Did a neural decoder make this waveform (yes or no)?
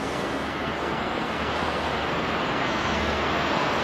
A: yes